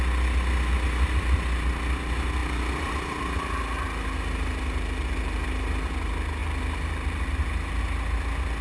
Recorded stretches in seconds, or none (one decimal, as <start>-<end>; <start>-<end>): 0.0-8.6